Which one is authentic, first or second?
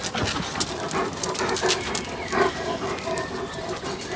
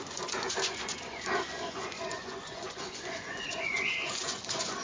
first